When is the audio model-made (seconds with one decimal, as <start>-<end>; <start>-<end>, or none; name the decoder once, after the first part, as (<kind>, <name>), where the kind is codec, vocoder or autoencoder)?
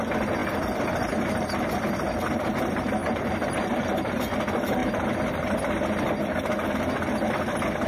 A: 3.0-3.7 (vocoder, BigVGAN v2)